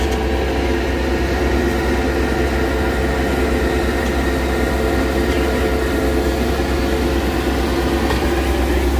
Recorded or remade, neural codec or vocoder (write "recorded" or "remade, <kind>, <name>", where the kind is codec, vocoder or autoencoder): recorded